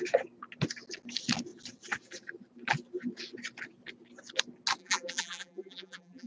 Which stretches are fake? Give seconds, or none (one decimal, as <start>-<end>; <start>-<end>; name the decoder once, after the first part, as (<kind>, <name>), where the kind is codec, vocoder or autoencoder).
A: 4.8-6.3 (vocoder, BigVGAN v2)